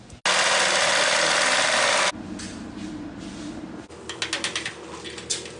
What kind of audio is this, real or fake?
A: real